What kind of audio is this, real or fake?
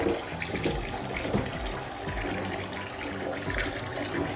real